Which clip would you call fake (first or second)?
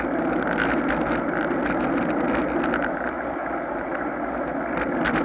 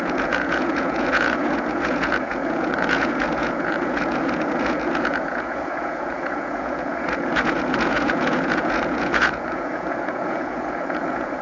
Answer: second